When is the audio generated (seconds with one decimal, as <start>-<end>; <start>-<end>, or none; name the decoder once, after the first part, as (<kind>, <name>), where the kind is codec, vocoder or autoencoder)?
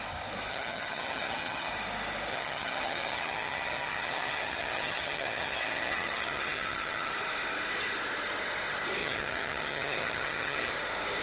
0.5-1.7 (vocoder, HiFi-GAN); 2.3-7.1; 9.0-10.7